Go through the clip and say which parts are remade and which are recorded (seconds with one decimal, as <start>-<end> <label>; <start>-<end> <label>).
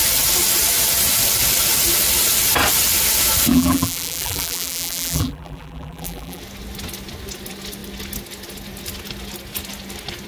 0.0-3.5 recorded; 3.5-6.4 remade; 6.4-10.3 recorded